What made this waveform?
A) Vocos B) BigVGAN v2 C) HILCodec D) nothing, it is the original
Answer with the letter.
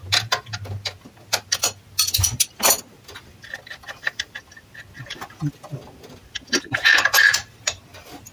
D